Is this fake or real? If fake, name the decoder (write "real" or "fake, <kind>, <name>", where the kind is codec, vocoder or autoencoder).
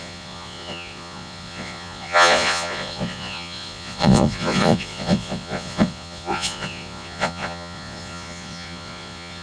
fake, vocoder, Vocos